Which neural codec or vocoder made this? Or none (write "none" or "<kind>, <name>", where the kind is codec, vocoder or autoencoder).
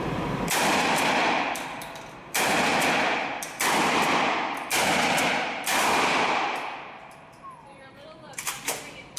vocoder, BigVGAN v2